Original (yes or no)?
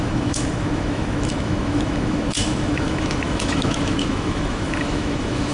no